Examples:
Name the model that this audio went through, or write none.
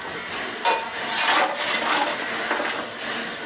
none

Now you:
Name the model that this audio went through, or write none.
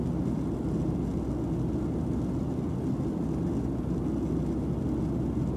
none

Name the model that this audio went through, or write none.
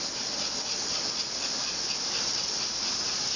none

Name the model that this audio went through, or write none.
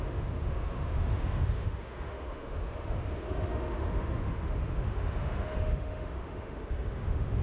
autoencoder, DAC-VAE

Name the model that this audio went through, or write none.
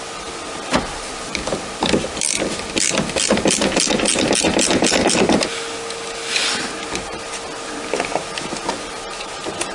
none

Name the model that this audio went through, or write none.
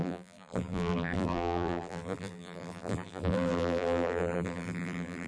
vocoder, BigVGAN v2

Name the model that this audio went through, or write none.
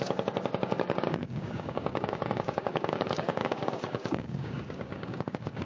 codec, DAC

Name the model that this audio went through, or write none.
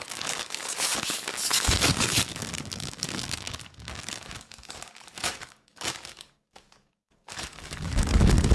codec, DAC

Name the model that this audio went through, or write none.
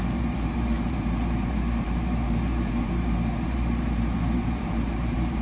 vocoder, BigVGAN v2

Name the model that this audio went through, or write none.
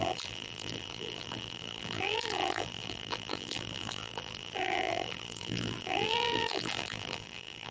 vocoder, BigVGAN v2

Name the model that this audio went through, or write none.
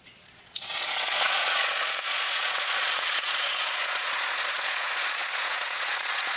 vocoder, Vocos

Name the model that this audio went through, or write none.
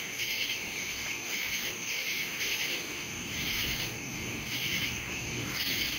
codec, DAC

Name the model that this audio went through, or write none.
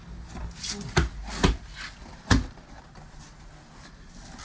none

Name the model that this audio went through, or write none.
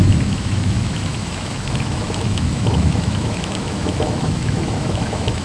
autoencoder, DAC-VAE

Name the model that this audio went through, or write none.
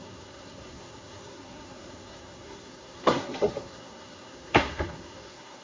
codec, SNAC